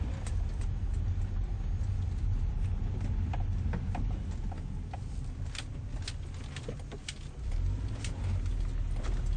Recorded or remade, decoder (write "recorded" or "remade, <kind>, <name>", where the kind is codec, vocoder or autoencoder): recorded